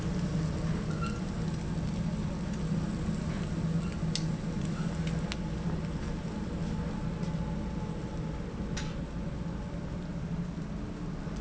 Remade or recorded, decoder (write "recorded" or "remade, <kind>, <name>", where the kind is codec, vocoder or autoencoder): recorded